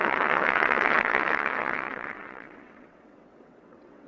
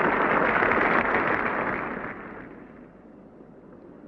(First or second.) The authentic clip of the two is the second